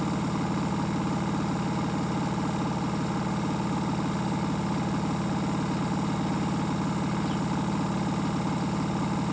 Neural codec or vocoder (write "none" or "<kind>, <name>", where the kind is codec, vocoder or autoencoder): none